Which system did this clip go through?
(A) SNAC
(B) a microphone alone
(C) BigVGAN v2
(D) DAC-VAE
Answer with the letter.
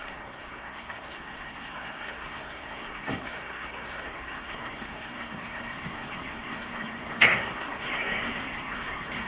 A